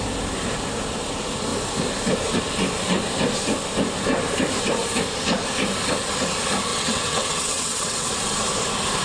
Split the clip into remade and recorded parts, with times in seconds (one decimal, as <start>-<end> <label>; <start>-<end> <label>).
0.0-6.7 recorded; 6.7-8.1 remade; 8.1-9.0 recorded